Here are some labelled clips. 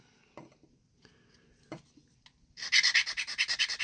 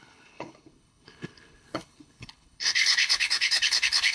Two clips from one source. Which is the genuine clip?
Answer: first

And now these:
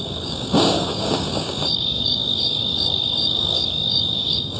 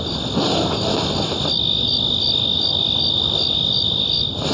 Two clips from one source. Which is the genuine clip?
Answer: second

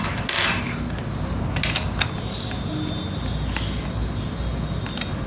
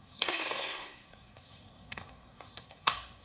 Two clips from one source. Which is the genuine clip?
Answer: first